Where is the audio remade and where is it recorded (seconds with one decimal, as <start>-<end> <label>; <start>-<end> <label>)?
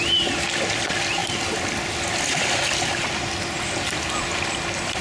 0.0-5.0 recorded